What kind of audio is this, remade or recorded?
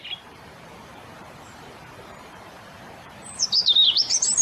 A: remade